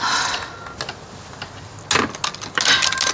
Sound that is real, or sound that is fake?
real